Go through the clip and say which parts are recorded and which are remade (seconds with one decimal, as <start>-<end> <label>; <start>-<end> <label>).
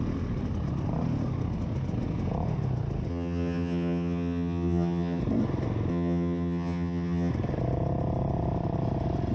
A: 0.0-3.1 recorded; 3.1-5.2 remade; 5.2-5.9 recorded; 5.9-7.3 remade; 7.3-9.3 recorded